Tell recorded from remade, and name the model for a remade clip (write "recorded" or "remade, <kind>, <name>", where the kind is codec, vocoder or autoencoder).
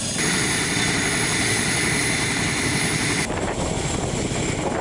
recorded